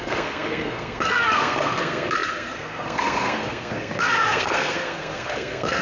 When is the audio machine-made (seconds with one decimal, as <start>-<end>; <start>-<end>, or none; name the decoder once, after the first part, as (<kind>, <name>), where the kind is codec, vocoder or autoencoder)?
0.0-5.8 (codec, SNAC)